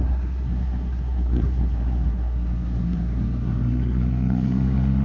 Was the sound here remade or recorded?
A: remade